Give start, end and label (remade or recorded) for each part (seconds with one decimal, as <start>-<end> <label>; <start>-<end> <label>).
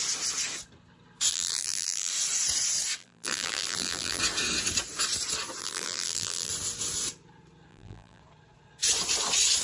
0.0-1.3 recorded; 1.3-2.1 remade; 2.1-3.0 recorded; 3.0-4.2 remade; 4.2-5.6 recorded; 5.6-6.5 remade; 6.5-7.7 recorded; 7.7-8.2 remade; 8.2-9.6 recorded